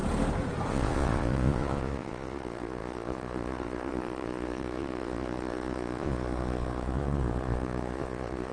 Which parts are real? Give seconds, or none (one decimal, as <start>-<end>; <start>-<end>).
0.0-0.7

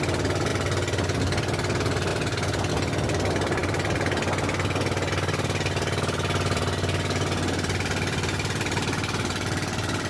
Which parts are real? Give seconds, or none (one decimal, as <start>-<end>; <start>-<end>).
0.0-10.1

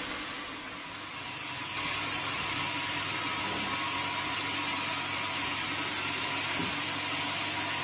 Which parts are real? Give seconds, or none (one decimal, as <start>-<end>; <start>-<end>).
0.0-7.8

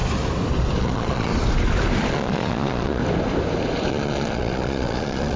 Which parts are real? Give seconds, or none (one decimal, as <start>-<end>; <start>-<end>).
0.0-0.8; 1.3-2.1; 3.0-3.9

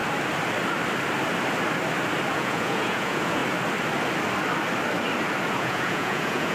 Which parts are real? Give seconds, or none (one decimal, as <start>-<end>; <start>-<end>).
0.0-2.3; 3.4-5.5